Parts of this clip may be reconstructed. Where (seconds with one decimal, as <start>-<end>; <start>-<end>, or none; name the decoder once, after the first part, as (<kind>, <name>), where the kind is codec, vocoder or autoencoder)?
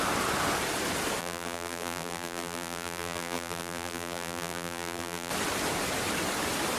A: 1.2-5.3 (vocoder, BigVGAN v2)